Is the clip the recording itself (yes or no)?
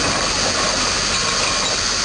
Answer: yes